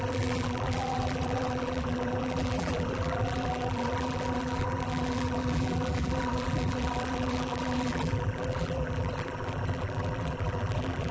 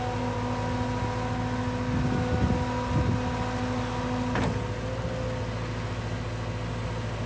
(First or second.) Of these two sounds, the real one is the second